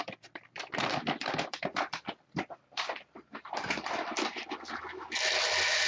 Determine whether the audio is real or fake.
fake